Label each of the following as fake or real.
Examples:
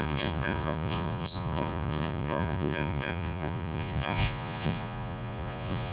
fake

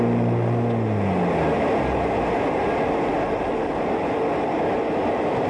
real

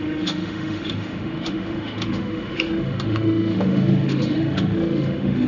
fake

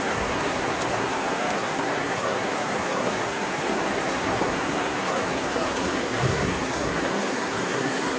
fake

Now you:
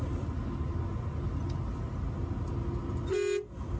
real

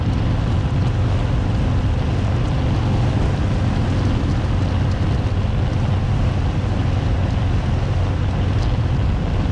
real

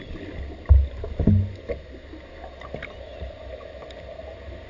real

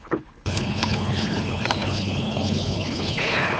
fake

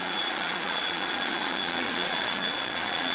fake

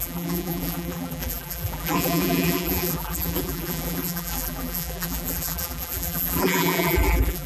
fake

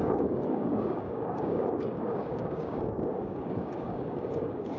fake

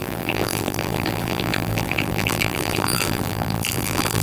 fake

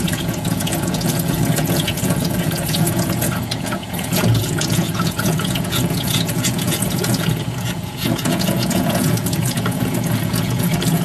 fake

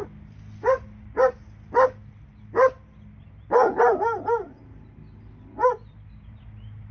real